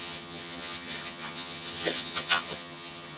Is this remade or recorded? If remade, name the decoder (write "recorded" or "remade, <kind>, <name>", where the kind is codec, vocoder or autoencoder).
remade, vocoder, HiFi-GAN